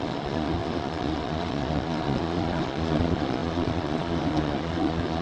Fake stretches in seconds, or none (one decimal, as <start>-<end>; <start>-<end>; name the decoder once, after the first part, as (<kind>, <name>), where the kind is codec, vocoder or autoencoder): 0.0-5.2 (vocoder, Vocos)